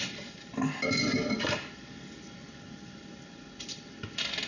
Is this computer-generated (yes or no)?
no